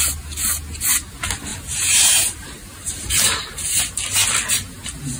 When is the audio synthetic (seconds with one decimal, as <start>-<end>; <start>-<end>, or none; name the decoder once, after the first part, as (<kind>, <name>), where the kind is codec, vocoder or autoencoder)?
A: 1.5-3.8 (vocoder, BigVGAN v2)